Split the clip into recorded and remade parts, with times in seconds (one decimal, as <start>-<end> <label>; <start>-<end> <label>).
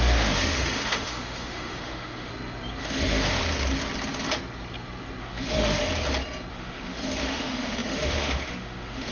0.0-2.3 remade; 2.3-2.8 recorded; 2.8-3.4 remade; 3.4-5.2 recorded; 5.2-5.8 remade; 5.8-6.5 recorded; 6.5-9.1 remade